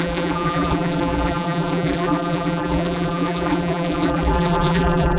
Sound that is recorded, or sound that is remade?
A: remade